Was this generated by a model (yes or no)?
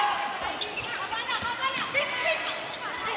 no